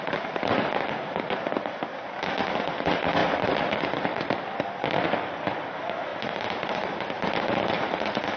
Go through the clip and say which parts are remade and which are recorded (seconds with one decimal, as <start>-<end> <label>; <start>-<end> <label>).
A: 0.0-3.2 recorded; 3.2-5.3 remade; 5.3-8.4 recorded